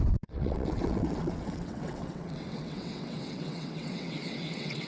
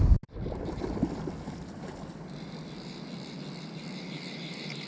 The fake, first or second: first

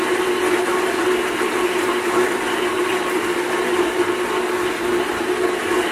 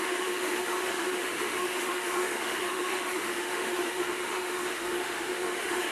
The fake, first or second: second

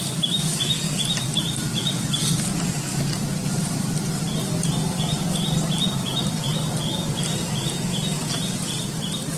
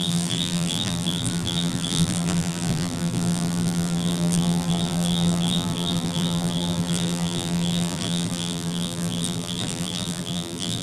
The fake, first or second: second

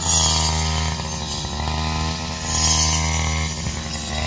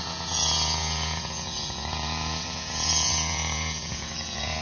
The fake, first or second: second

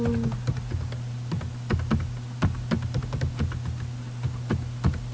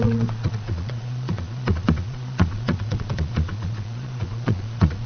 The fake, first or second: second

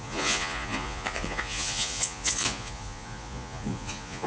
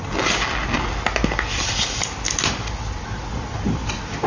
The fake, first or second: first